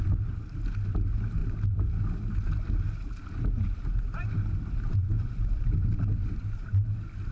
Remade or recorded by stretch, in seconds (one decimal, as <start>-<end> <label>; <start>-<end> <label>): 0.0-7.3 recorded